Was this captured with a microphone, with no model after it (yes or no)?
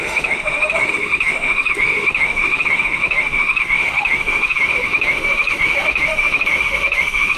no